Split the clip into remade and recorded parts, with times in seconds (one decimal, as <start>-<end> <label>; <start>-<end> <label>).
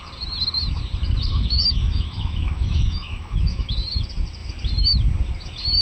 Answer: 0.0-1.3 recorded; 1.3-3.7 remade; 3.7-5.8 recorded